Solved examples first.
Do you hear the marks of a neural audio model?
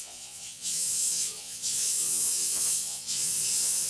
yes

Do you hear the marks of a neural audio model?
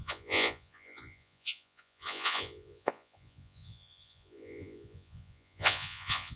yes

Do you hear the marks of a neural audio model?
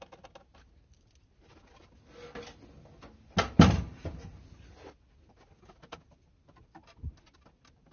no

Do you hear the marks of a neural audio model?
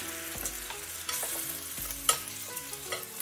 no